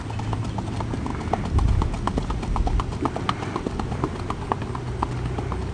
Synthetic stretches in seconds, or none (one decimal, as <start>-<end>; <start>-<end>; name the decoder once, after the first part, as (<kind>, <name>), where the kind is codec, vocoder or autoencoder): none